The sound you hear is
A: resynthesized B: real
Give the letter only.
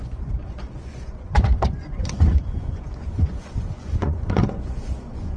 A